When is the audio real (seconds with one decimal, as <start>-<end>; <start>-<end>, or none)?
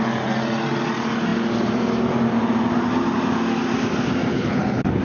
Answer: 0.0-4.3